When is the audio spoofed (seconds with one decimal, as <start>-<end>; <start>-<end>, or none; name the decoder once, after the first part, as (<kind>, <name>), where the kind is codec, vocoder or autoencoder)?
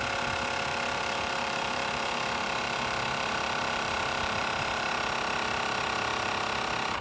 0.7-4.9 (vocoder, BigVGAN v2)